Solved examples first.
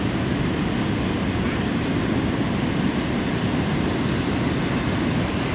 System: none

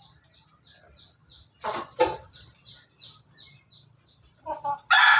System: none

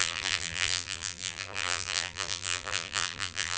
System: vocoder, BigVGAN v2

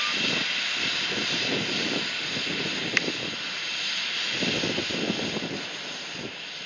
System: vocoder, BigVGAN v2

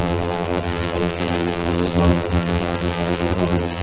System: vocoder, BigVGAN v2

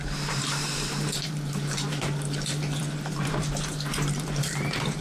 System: vocoder, BigVGAN v2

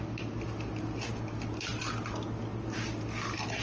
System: none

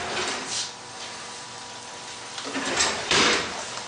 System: vocoder, BigVGAN v2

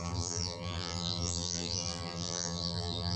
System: vocoder, BigVGAN v2